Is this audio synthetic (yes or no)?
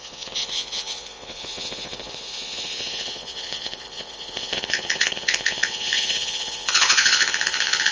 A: yes